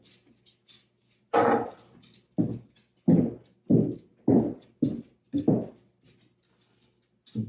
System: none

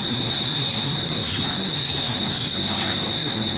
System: codec, SNAC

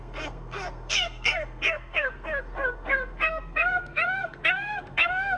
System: codec, SNAC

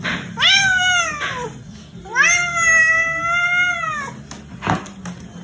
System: none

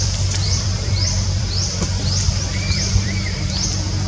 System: vocoder, BigVGAN v2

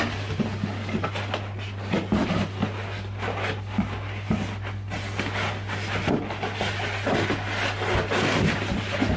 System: none